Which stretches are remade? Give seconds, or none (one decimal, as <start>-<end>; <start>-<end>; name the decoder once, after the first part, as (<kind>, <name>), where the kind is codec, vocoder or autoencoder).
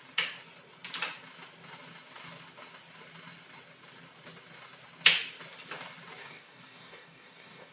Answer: 6.2-7.7 (codec, DAC)